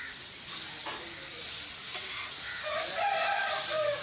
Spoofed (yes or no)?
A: no